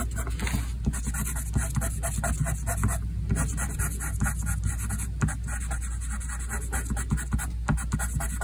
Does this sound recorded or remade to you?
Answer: recorded